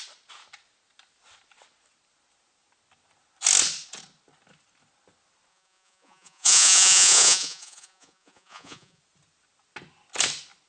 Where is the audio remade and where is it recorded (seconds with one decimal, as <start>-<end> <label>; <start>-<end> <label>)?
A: 0.0-5.5 recorded; 5.5-9.0 remade; 9.0-10.7 recorded